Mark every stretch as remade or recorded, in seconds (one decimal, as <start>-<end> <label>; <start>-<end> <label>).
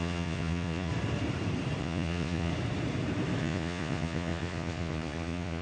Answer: 0.0-0.9 remade; 0.9-1.8 recorded; 1.8-2.5 remade; 2.5-3.4 recorded; 3.4-5.6 remade